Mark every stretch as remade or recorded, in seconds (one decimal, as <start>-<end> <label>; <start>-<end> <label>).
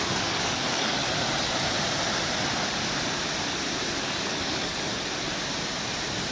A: 0.0-1.0 remade; 1.0-4.0 recorded; 4.0-4.9 remade; 4.9-6.3 recorded